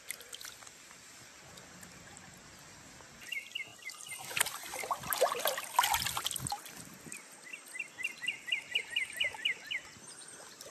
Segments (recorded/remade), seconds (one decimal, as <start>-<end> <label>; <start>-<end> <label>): 0.0-10.7 recorded